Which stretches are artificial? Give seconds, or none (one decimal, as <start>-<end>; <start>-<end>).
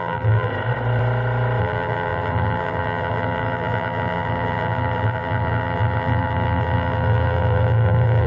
0.0-0.5; 1.6-8.3